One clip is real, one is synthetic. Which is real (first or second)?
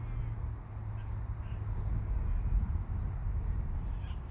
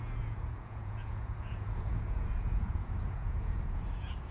first